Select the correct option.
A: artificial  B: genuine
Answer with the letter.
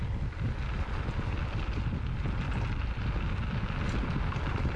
B